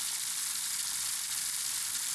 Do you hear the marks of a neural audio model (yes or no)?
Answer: no